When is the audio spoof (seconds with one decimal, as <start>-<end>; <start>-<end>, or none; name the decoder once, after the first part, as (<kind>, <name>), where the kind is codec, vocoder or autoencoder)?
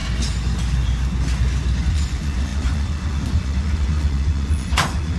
1.8-5.2 (vocoder, Vocos)